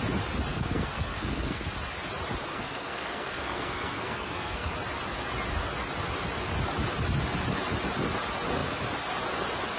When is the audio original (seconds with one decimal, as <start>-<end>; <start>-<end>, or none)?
0.0-0.5; 1.6-2.5; 4.7-9.8